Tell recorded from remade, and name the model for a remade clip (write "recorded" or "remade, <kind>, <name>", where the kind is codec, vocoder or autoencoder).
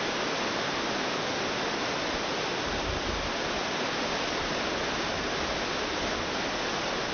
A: recorded